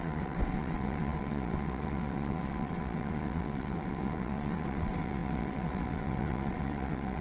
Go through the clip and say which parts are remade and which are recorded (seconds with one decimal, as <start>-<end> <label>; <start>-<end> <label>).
0.0-7.2 remade